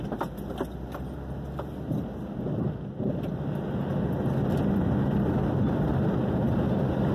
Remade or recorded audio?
recorded